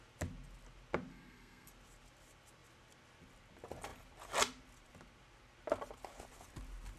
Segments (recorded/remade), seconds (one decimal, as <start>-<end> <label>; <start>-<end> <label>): 0.0-1.1 recorded; 1.1-1.7 remade; 1.7-7.0 recorded

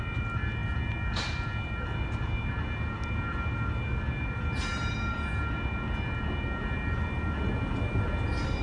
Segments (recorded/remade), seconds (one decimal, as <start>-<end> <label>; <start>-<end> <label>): 0.0-8.6 recorded

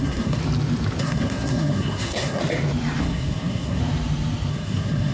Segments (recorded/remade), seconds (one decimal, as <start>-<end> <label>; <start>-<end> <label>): 0.0-0.4 remade; 0.4-1.0 recorded; 1.0-2.4 remade; 2.4-3.0 recorded; 3.0-3.8 remade; 3.8-4.5 recorded; 4.5-5.1 remade

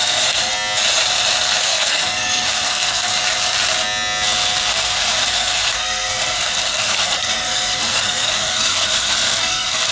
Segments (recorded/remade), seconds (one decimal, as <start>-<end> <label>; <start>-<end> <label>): 0.0-0.5 remade; 0.5-1.6 recorded; 1.6-3.1 remade; 3.1-4.7 recorded; 4.7-9.9 remade

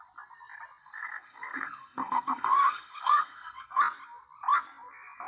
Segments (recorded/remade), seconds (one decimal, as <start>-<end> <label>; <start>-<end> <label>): 0.0-0.8 recorded; 0.8-3.8 remade; 3.8-5.3 recorded

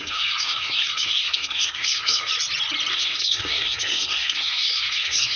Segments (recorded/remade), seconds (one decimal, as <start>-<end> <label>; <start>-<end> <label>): 0.0-2.3 remade; 2.3-2.9 recorded; 2.9-5.4 remade

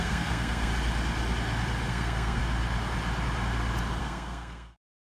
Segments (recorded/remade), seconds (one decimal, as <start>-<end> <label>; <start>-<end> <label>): 0.0-0.7 remade; 0.7-1.9 recorded; 1.9-2.4 remade; 2.4-4.0 recorded; 4.0-5.1 remade

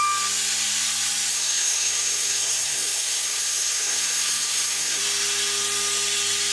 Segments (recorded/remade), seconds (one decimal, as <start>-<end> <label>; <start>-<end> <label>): 0.0-1.3 recorded; 1.3-5.0 remade; 5.0-6.5 recorded